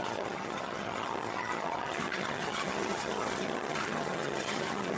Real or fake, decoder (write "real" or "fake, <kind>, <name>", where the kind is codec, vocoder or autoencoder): fake, vocoder, HiFi-GAN